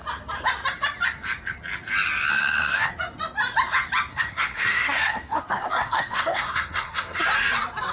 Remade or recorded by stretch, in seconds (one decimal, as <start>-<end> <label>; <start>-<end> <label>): 0.0-2.3 recorded; 2.3-2.9 remade; 2.9-4.1 recorded; 4.1-7.2 remade; 7.2-7.9 recorded